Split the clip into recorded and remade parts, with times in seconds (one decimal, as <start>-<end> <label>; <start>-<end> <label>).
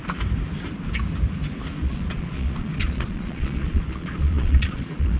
0.0-1.8 recorded; 1.8-5.2 remade